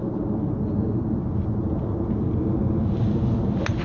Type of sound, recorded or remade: recorded